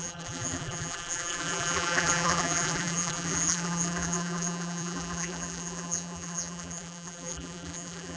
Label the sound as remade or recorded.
remade